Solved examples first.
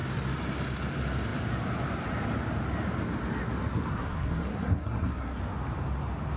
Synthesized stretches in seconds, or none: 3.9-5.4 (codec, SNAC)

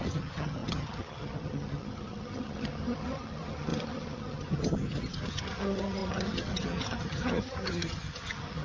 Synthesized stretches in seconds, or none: 0.0-8.6 (vocoder, HiFi-GAN)

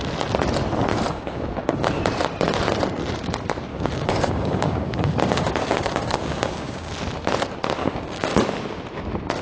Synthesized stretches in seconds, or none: 0.9-2.0 (codec, DAC); 3.7-6.9; 7.8-8.4

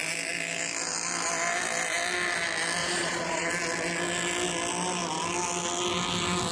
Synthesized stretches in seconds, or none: 2.8-3.5 (vocoder, Vocos)

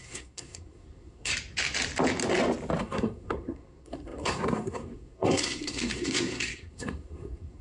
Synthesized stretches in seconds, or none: 0.0-1.3 (codec, SNAC); 2.8-7.6

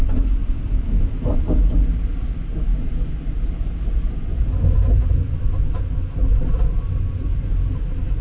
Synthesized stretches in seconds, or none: 0.4-2.3 (vocoder, BigVGAN v2); 2.7-5.6; 7.3-8.2